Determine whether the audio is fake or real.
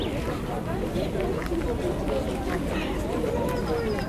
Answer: real